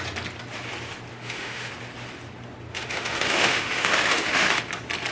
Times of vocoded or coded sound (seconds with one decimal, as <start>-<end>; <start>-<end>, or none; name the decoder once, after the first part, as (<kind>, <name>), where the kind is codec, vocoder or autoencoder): 1.1-1.7 (autoencoder, DAC-VAE); 2.7-4.6